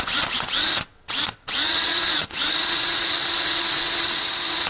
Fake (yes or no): yes